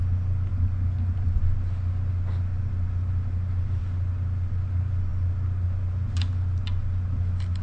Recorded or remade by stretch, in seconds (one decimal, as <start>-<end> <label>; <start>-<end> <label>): 0.0-7.6 recorded